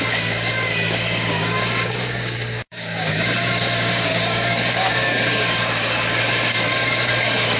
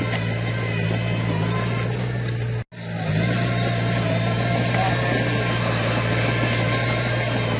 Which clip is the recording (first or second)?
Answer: second